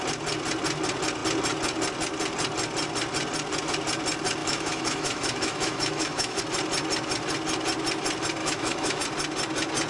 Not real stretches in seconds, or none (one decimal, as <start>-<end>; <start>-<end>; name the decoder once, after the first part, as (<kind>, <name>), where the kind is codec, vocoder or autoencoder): 4.4-6.4 (autoencoder, DAC-VAE); 8.4-9.0